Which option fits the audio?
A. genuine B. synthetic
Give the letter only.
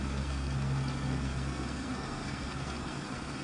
B